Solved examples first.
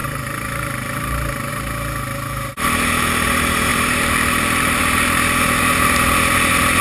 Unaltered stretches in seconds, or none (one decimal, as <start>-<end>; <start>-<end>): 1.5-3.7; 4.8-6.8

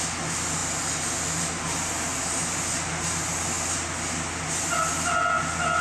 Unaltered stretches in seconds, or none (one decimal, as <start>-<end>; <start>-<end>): 0.0-5.8

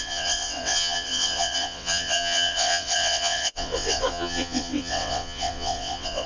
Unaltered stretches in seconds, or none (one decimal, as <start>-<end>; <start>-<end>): none

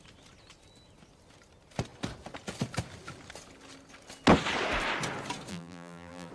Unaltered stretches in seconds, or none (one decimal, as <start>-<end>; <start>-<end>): 0.0-5.5